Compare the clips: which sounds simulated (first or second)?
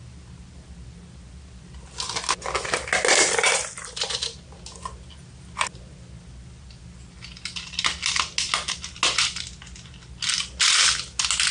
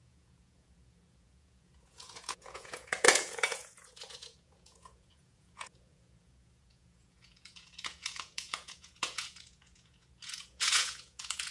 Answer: second